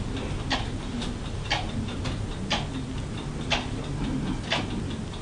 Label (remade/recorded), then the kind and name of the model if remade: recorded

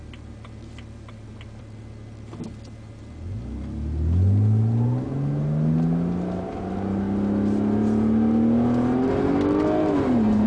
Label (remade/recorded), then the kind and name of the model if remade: recorded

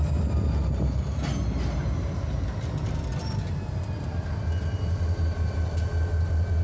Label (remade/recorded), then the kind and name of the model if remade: recorded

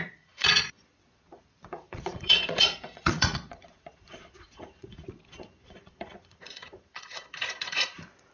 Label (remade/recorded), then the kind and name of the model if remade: remade, vocoder, Vocos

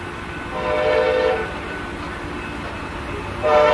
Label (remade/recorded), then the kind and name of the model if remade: recorded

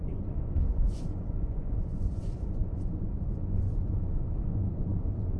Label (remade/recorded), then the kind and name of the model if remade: remade, vocoder, Vocos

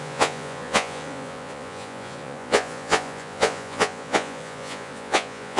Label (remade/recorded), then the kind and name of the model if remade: remade, vocoder, Vocos